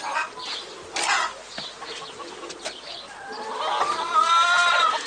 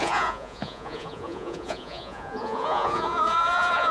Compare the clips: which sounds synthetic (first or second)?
second